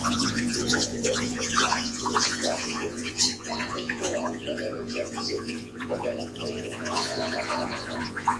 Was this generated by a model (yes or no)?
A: yes